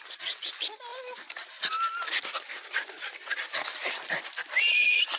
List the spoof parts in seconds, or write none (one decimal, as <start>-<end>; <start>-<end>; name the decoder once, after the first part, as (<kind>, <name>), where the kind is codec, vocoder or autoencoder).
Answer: none